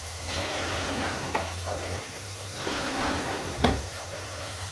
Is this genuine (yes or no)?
no